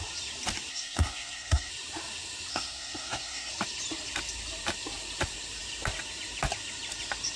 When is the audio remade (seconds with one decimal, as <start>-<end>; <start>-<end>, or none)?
0.7-1.7; 2.5-3.5